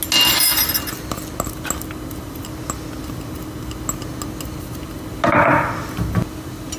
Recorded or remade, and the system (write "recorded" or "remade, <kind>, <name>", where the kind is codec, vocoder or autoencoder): recorded